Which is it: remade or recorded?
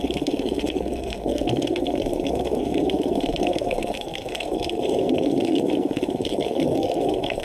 remade